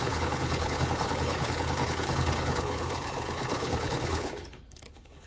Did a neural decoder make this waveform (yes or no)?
yes